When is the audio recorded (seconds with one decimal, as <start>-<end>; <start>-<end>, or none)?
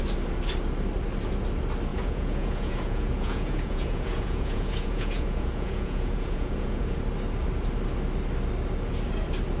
0.0-1.9; 7.0-9.6